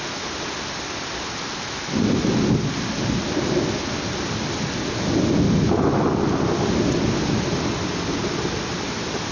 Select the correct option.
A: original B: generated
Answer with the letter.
A